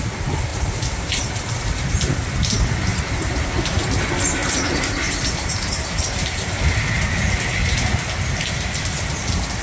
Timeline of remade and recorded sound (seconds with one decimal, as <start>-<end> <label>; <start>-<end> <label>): 0.0-0.5 recorded; 0.5-1.4 remade; 1.4-2.9 recorded; 2.9-3.5 remade; 3.5-4.4 recorded; 4.4-6.6 remade; 6.6-9.6 recorded